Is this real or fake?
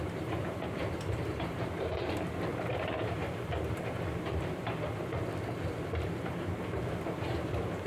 fake